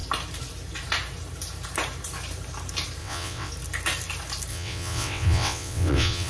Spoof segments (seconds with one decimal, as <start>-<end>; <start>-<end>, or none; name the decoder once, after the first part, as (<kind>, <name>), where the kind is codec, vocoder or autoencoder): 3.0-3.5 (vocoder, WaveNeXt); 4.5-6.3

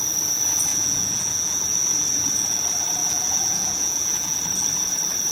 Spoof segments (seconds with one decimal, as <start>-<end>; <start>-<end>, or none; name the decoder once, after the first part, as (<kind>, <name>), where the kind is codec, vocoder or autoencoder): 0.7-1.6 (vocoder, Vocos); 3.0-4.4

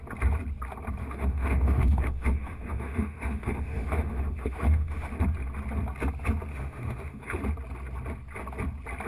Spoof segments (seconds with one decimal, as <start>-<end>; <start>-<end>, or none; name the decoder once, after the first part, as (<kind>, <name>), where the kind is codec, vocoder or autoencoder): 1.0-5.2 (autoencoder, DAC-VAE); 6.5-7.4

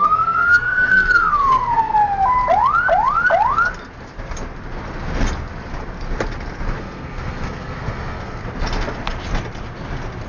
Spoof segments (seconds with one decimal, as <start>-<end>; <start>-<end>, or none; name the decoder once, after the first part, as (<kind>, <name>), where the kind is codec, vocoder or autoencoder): 0.0-1.9 (codec, SNAC); 6.8-8.4